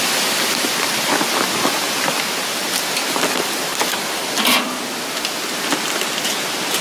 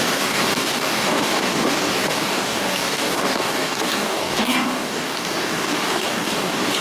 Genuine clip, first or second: first